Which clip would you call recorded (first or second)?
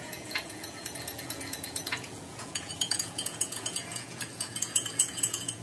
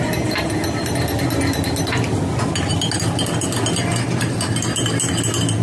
second